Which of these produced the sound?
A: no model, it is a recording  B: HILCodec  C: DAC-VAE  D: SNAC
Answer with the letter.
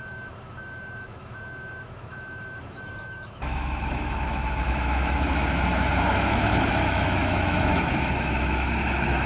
C